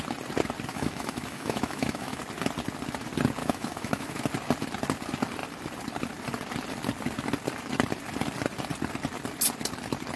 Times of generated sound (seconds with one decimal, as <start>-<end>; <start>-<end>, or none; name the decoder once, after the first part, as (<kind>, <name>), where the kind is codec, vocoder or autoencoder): 0.7-2.2 (autoencoder, DAC-VAE); 3.4-4.2